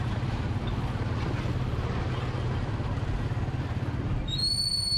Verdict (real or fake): real